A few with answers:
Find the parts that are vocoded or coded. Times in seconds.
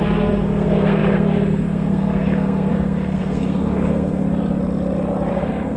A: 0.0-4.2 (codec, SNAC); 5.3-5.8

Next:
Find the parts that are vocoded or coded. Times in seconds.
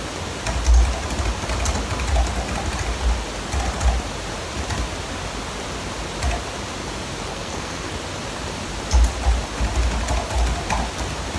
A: 7.3-7.9 (codec, SNAC)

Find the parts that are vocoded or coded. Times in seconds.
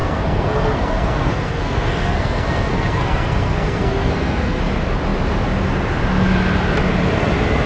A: 0.0-4.6 (codec, SNAC)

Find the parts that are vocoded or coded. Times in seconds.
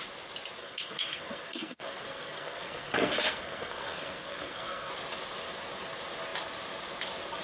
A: 0.6-4.9 (codec, SNAC)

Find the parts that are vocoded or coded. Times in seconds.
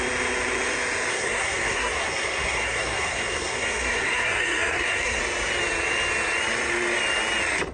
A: 1.1-5.2 (codec, SNAC)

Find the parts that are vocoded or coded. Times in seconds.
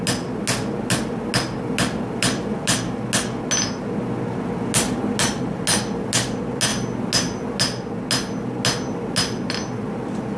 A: none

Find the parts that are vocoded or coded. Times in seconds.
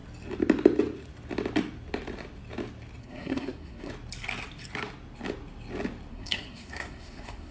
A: 3.0-3.9 (codec, SNAC); 6.1-7.5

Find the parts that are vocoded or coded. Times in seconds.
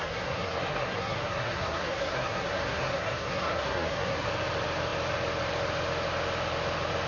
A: 0.0-4.3 (codec, SNAC)